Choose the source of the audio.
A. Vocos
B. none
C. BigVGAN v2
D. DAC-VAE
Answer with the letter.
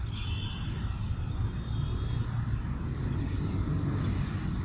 C